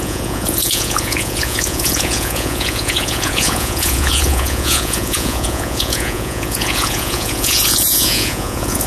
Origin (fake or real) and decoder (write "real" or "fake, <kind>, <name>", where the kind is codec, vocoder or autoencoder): fake, vocoder, Vocos